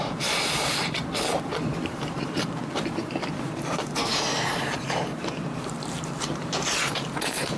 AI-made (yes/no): yes